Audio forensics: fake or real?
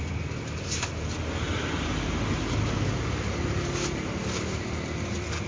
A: real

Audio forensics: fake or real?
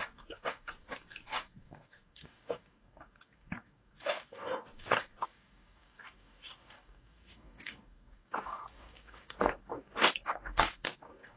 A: fake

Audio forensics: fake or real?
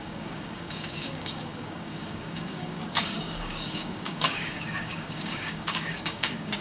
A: fake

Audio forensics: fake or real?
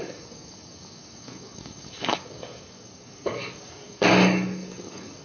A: fake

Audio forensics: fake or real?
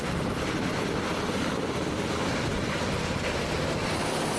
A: real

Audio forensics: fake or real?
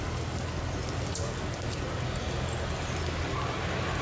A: real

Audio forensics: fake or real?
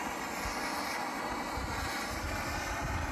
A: real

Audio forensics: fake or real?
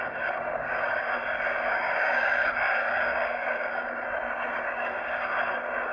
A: fake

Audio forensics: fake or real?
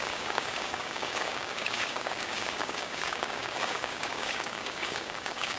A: fake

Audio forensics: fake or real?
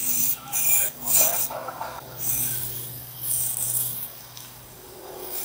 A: fake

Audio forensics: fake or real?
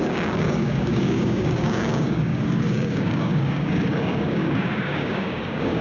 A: fake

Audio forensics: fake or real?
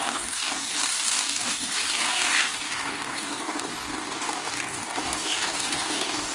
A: fake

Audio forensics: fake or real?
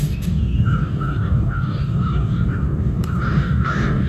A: fake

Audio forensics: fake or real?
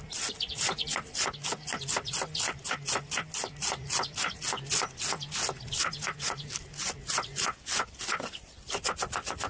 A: real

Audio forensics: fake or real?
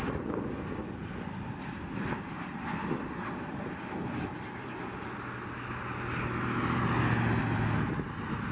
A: real